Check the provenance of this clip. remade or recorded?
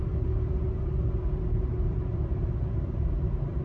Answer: recorded